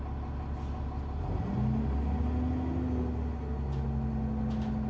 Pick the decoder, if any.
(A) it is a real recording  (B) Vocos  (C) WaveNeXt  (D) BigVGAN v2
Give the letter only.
A